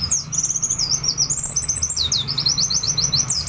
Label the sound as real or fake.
real